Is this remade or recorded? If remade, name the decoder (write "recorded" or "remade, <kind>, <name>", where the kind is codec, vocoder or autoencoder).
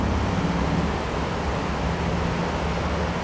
recorded